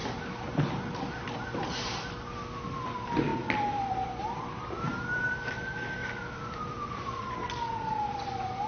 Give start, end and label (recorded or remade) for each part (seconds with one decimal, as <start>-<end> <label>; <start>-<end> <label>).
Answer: 0.0-3.3 recorded; 3.3-5.6 remade; 5.6-6.0 recorded; 6.0-8.7 remade